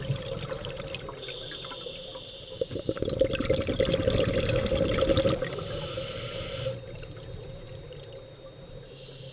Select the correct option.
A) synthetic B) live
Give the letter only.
B